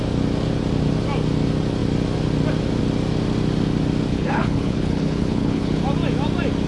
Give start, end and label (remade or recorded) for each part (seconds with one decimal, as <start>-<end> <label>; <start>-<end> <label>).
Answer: 0.0-4.1 recorded; 4.1-5.8 remade; 5.8-6.7 recorded